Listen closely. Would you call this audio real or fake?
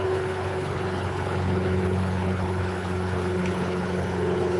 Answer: fake